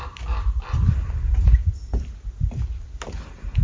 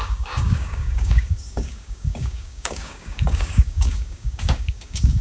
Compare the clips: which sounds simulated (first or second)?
second